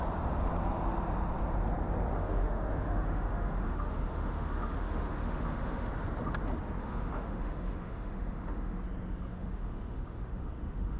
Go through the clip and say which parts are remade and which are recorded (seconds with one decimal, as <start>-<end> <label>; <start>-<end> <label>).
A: 0.0-2.1 recorded; 2.1-5.9 remade; 5.9-6.8 recorded; 6.8-8.8 remade; 8.8-9.3 recorded; 9.3-11.0 remade